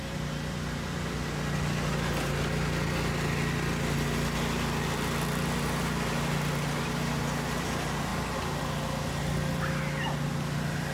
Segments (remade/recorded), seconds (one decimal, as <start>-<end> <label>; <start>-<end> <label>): 0.0-10.9 recorded